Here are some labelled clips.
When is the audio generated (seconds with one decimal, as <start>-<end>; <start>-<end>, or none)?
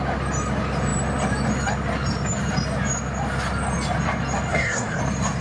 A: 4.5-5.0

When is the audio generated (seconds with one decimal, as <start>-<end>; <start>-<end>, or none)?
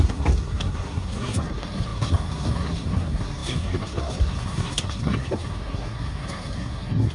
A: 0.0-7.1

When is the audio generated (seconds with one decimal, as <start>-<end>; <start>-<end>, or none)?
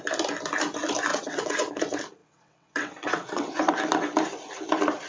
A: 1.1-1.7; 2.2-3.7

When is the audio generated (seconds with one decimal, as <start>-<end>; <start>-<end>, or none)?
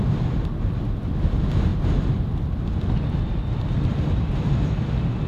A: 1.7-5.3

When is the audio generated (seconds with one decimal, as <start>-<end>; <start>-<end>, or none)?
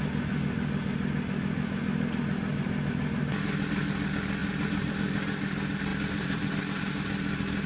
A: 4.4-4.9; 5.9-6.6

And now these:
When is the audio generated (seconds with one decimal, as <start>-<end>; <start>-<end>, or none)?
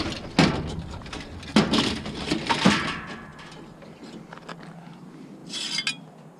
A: none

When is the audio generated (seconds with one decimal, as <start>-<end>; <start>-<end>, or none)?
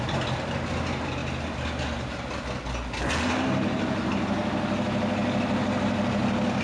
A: none